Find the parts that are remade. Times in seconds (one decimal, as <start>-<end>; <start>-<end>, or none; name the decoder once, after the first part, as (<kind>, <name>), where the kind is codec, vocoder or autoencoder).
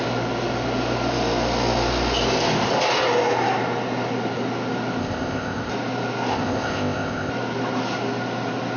5.0-5.7 (codec, ZipCodec); 6.3-7.3